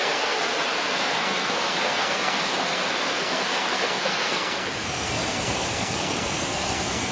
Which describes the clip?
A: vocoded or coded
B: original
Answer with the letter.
A